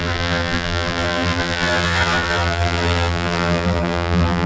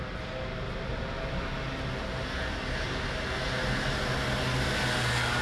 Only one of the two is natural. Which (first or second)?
second